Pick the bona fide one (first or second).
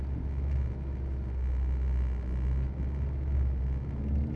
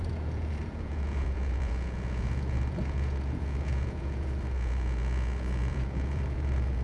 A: first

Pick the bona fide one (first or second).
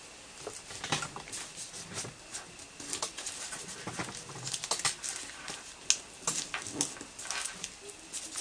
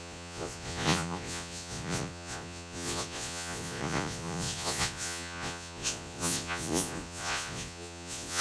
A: first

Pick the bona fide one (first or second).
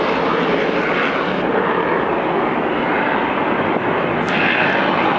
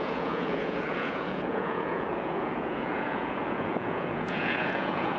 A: first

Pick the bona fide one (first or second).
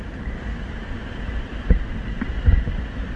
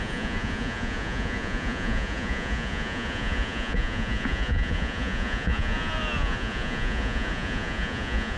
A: first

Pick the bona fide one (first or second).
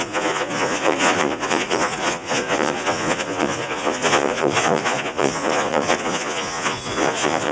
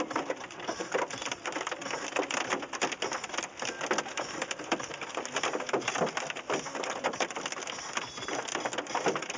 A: second